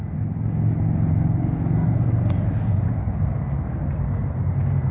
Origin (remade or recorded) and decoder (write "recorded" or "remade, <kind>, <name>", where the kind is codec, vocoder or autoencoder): recorded